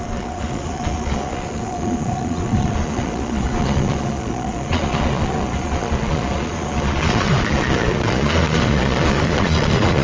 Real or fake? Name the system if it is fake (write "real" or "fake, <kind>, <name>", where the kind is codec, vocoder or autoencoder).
fake, vocoder, Vocos